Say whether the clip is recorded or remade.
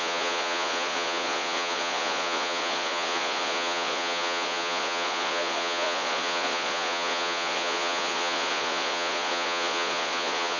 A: remade